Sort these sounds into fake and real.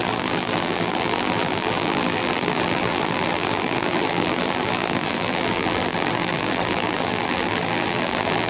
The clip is fake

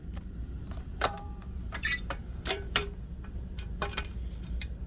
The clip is fake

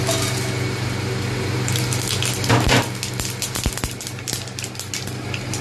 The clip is real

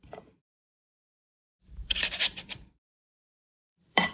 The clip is fake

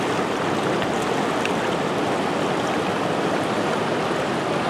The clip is real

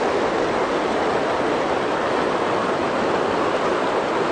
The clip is real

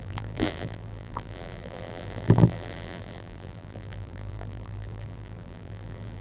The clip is fake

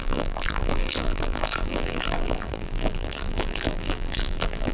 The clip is fake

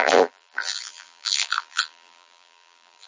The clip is fake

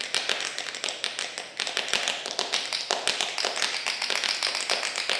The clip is real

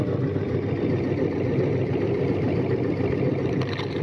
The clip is fake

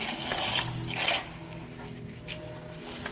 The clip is real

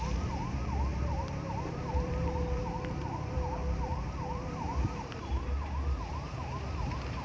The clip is fake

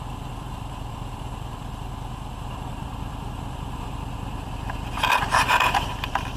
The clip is fake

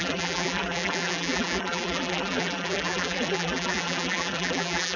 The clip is fake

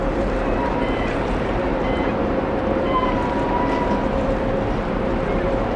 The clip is fake